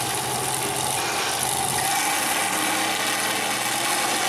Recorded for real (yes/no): yes